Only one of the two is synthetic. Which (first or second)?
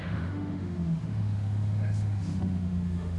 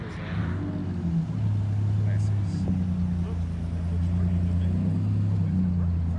first